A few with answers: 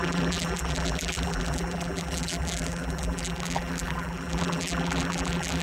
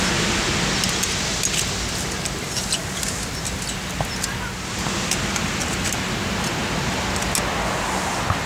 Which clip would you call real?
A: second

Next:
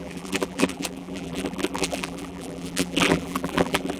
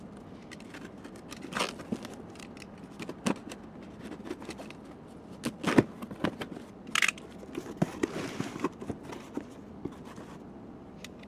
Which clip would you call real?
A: second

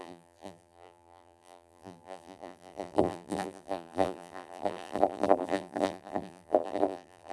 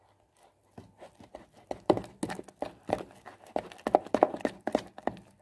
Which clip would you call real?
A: second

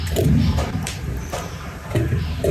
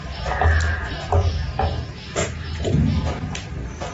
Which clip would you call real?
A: second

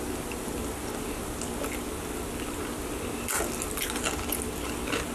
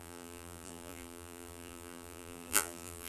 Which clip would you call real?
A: first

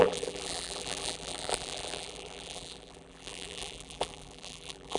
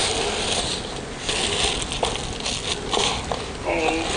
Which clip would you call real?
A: second